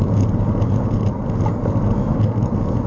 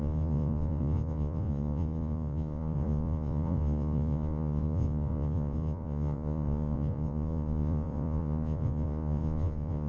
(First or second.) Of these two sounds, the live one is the first